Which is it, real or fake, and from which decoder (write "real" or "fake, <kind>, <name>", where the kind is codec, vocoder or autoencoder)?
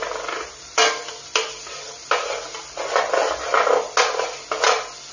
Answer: real